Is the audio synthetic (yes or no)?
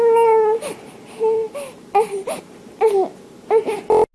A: no